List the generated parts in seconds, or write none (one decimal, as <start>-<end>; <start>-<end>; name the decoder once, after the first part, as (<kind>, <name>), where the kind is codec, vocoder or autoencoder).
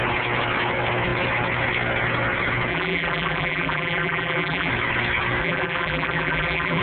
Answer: 2.7-4.7 (vocoder, BigVGAN v2); 5.4-6.8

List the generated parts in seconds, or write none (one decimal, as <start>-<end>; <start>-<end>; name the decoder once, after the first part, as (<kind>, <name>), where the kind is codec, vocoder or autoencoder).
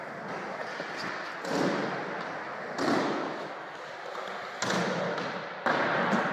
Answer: none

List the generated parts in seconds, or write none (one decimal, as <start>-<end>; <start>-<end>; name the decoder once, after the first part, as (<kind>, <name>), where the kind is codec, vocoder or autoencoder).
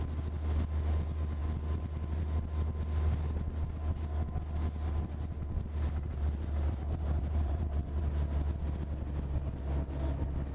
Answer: 6.1-8.0 (vocoder, BigVGAN v2)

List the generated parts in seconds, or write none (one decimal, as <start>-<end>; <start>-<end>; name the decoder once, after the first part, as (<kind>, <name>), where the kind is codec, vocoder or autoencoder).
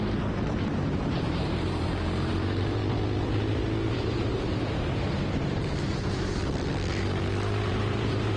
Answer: 0.0-2.8 (vocoder, BigVGAN v2); 3.9-6.4; 7.7-8.4